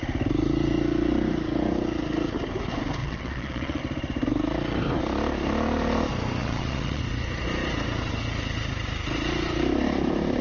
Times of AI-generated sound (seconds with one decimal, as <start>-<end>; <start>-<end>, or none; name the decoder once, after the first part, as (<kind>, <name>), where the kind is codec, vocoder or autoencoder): 3.0-3.8 (vocoder, Vocos); 6.4-7.0